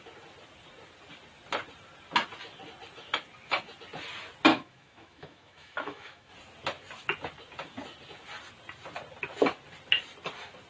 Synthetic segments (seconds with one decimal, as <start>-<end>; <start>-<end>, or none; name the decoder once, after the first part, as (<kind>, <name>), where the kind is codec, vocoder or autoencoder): 4.5-6.3 (autoencoder, DAC-VAE)